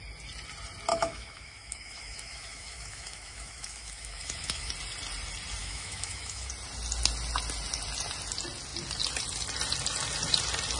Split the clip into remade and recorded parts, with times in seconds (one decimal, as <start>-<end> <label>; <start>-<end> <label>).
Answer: 0.0-0.9 recorded; 0.9-4.7 remade; 4.7-5.6 recorded; 5.6-6.5 remade; 6.5-10.8 recorded